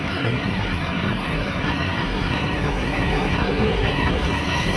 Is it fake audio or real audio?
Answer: fake